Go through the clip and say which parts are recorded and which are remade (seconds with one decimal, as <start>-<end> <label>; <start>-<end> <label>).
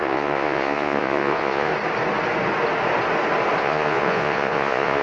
0.0-1.7 remade; 1.7-3.6 recorded; 3.6-5.0 remade